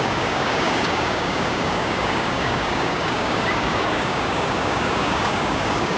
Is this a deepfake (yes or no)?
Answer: yes